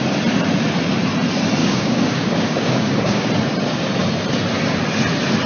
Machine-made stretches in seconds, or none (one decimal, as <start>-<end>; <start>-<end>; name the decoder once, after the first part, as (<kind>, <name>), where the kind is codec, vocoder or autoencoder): 1.6-3.3 (codec, DAC)